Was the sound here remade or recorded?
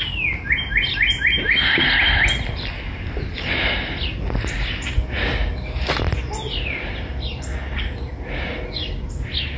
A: recorded